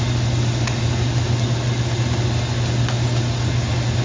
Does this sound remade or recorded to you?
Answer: recorded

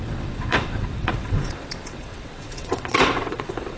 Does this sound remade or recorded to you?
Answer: remade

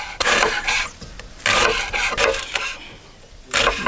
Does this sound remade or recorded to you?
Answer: recorded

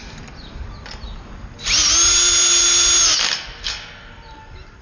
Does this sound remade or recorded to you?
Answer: recorded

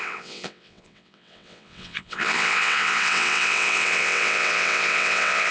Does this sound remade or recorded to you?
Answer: remade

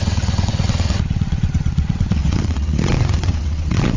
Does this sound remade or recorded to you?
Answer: remade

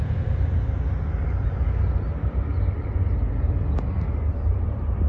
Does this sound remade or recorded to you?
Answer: recorded